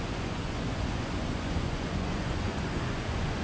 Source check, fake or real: fake